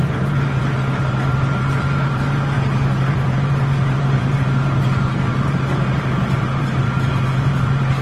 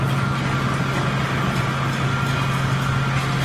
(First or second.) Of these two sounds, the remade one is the first